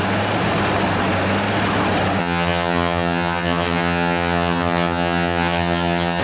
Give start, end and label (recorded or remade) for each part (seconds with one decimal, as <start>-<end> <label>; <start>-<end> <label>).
0.0-2.2 recorded; 2.2-6.2 remade